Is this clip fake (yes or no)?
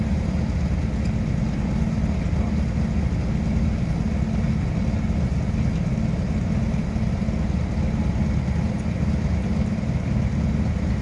no